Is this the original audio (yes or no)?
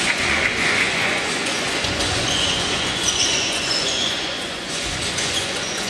no